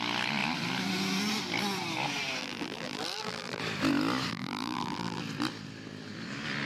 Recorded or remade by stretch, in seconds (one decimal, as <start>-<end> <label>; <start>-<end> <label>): 0.0-2.4 recorded; 2.4-3.6 remade; 3.6-4.3 recorded; 4.3-5.2 remade; 5.2-6.7 recorded